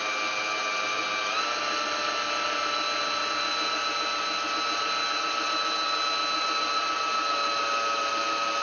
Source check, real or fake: real